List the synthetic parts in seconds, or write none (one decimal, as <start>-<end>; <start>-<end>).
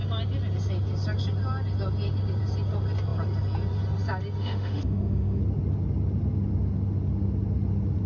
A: 4.4-5.4